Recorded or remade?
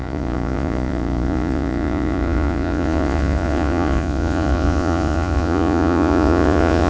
remade